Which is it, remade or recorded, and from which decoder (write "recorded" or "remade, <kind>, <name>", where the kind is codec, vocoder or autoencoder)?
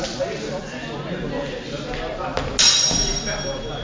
recorded